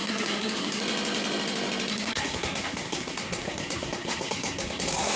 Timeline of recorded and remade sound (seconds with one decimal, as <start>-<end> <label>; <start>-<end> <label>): 0.0-0.8 remade; 0.8-1.9 recorded; 1.9-5.2 remade